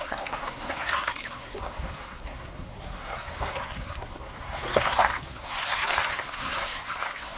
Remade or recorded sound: remade